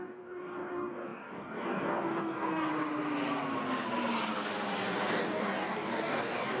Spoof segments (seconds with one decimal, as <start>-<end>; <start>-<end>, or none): 0.0-2.7; 5.1-6.6